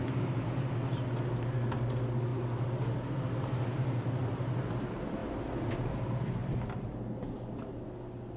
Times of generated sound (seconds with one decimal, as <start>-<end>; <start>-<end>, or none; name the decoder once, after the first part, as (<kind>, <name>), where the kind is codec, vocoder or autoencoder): none